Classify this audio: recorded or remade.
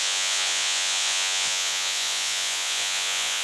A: remade